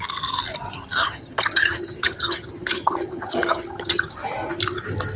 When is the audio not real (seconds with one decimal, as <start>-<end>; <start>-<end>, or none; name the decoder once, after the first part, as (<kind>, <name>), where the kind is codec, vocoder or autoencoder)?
1.0-4.1 (vocoder, HiFi-GAN)